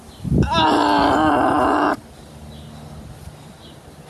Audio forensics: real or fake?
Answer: real